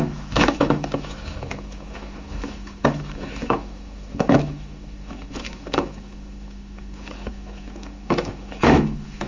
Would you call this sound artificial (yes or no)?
yes